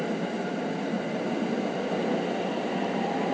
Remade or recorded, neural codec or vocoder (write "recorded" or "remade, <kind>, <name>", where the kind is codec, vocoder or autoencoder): recorded